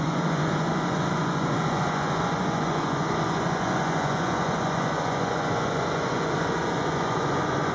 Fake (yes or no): yes